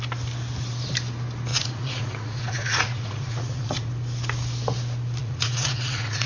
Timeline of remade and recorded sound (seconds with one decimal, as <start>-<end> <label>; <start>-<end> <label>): 0.0-1.5 recorded; 1.5-3.9 remade; 3.9-5.2 recorded; 5.2-6.3 remade